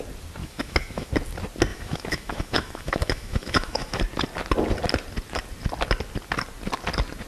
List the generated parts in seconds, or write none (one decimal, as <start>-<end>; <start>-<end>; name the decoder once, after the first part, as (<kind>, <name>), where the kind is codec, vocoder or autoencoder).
0.4-1.1 (autoencoder, DAC-VAE); 1.7-4.0